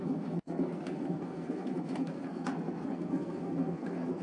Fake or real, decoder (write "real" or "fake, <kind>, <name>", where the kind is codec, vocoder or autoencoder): fake, codec, SNAC